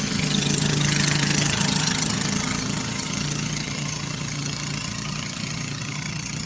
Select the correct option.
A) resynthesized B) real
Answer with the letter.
A